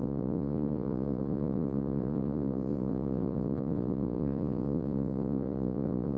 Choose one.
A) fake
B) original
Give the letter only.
A